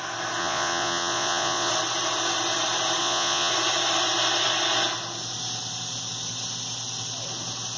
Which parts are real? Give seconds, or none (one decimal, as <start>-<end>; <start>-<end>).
0.0-0.4; 1.7-3.0; 3.5-7.8